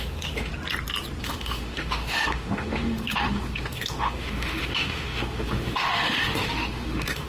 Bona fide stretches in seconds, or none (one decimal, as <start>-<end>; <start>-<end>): 0.5-1.2